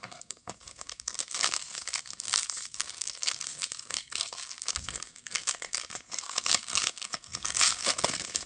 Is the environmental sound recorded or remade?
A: remade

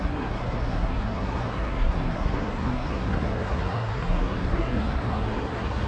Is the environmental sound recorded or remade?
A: remade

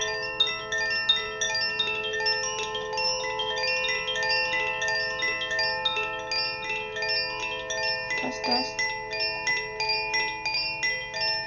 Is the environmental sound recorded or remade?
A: recorded